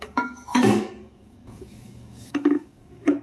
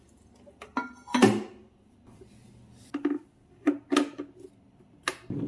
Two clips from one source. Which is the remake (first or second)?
first